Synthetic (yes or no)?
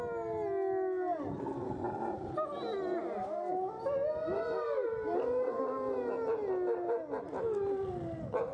no